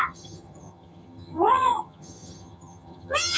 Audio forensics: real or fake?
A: fake